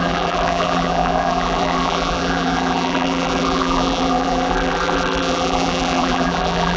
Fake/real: fake